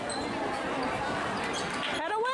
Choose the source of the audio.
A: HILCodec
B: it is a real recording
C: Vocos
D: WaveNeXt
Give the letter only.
B